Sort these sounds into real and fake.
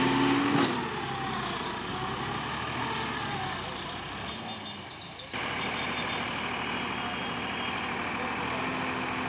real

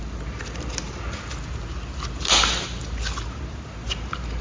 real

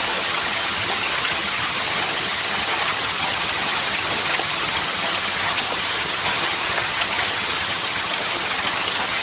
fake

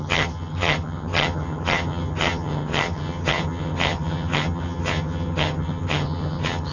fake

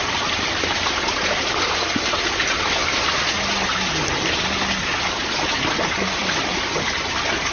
real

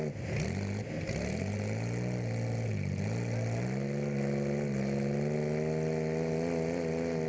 real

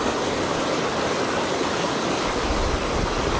real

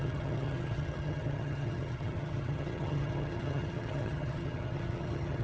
fake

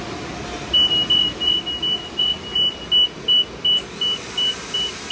real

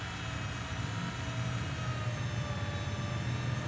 real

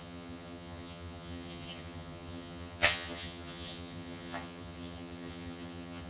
fake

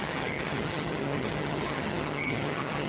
fake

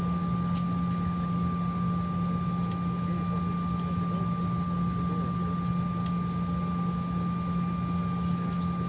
real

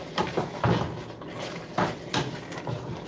real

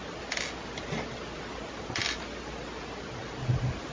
real